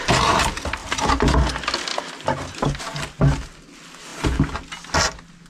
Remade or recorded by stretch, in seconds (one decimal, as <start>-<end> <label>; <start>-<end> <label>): 0.0-0.8 recorded; 0.8-1.4 remade; 1.4-5.5 recorded